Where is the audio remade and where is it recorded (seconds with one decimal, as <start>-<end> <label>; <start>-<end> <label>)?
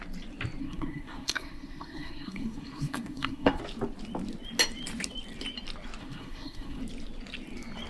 0.0-0.6 recorded; 0.6-3.6 remade; 3.6-6.0 recorded; 6.0-6.8 remade; 6.8-7.9 recorded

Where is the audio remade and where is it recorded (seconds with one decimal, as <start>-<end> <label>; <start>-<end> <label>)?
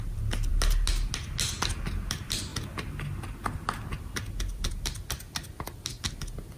0.0-6.6 recorded